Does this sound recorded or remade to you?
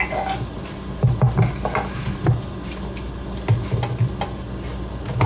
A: recorded